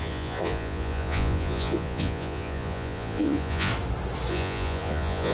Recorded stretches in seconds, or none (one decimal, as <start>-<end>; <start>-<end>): 3.7-4.3

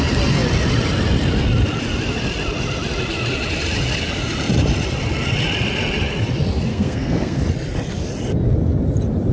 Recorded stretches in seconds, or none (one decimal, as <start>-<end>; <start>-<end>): 0.0-6.7; 7.4-9.3